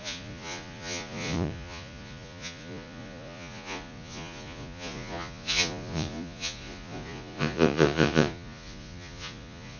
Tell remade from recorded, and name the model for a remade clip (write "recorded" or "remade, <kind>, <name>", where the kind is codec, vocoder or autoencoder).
remade, vocoder, Vocos